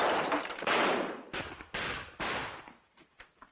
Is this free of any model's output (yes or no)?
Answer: no